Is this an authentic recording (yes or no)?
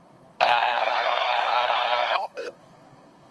no